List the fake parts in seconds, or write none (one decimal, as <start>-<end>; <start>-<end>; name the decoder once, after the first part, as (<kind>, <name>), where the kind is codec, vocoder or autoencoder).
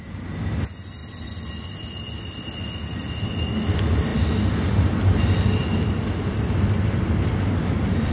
none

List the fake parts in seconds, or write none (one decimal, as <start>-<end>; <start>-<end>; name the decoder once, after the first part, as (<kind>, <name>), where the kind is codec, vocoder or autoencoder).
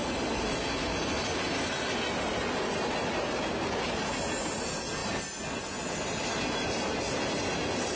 none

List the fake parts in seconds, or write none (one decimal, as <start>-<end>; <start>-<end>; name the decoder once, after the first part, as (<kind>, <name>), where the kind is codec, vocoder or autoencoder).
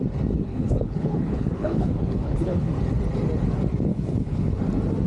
0.5-2.7 (codec, HILCodec); 3.9-4.6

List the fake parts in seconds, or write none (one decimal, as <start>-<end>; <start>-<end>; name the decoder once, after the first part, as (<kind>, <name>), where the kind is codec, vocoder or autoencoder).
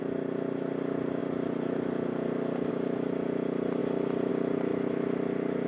1.2-2.7 (vocoder, BigVGAN v2); 3.8-4.3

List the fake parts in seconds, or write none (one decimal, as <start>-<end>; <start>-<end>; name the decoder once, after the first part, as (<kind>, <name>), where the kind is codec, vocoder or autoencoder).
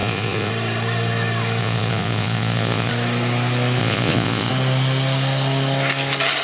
0.0-0.5 (vocoder, Vocos); 1.6-2.9; 3.8-4.5